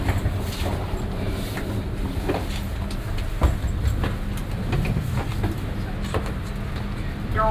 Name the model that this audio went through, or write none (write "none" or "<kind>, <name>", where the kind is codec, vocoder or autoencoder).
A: none